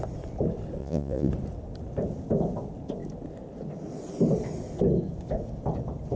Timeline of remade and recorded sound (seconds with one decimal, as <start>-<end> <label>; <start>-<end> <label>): 0.0-0.8 recorded; 0.8-1.3 remade; 1.3-6.2 recorded